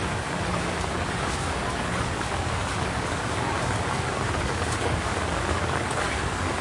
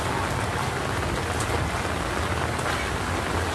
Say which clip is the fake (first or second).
first